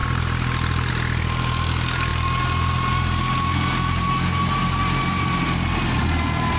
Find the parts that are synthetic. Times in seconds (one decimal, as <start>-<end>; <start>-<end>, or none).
none